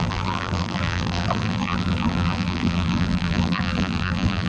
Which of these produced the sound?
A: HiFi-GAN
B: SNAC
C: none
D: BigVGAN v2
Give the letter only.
D